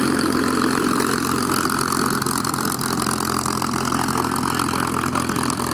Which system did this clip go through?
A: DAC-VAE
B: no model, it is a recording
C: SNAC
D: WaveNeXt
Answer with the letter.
B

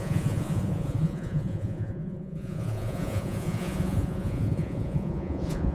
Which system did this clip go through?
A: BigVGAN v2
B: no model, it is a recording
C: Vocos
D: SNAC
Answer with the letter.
C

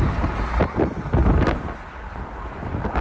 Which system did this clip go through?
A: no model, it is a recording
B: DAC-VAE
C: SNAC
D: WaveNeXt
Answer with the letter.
A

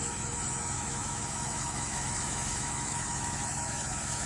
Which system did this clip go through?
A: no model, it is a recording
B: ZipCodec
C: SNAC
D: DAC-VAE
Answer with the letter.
D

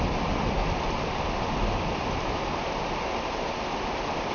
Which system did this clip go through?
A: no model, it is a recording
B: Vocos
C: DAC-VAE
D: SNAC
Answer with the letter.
A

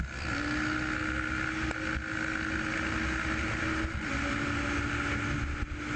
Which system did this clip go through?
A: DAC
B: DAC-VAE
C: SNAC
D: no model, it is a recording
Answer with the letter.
D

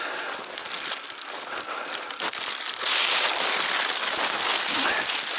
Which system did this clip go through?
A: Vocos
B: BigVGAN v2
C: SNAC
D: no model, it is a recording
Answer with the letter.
D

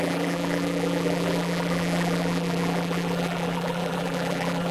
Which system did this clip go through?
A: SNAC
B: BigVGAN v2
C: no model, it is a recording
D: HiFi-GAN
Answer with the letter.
B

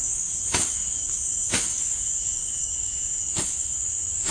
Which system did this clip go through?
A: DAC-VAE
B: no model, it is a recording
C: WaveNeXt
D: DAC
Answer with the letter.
D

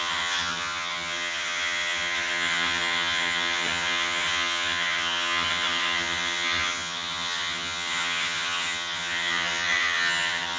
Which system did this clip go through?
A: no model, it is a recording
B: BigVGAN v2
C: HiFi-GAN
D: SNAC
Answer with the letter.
C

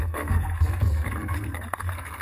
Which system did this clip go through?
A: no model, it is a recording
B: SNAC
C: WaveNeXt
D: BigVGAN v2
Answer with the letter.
B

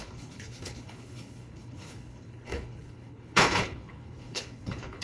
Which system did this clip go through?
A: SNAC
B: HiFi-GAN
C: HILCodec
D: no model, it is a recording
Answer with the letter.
C